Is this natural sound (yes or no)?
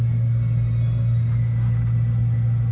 yes